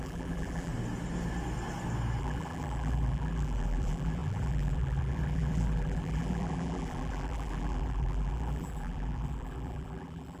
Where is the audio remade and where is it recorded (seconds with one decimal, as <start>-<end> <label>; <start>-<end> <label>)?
0.0-0.7 remade; 0.7-2.2 recorded; 2.2-10.4 remade